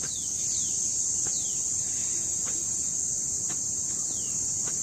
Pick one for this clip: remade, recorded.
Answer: recorded